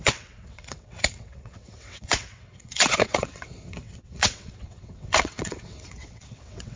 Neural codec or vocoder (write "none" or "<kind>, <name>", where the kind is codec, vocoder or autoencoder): vocoder, WaveNeXt